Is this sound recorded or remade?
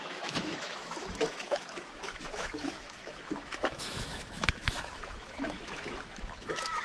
remade